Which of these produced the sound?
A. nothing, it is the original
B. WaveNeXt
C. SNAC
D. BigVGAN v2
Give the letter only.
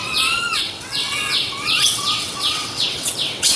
B